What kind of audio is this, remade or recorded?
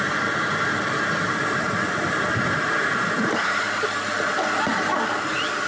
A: recorded